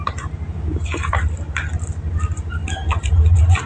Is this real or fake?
real